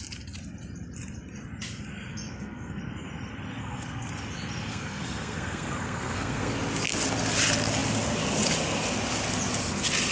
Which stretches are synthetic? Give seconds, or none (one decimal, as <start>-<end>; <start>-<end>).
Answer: 2.1-2.8; 3.6-4.1; 4.7-6.5